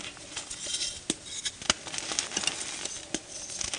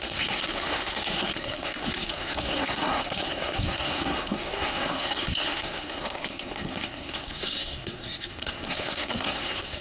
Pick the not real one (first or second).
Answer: second